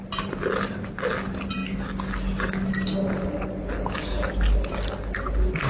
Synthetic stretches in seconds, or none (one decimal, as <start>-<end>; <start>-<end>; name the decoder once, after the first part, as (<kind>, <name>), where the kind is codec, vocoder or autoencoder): none